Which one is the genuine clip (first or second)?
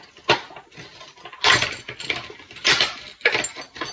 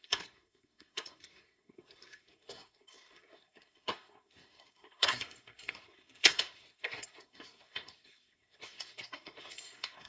first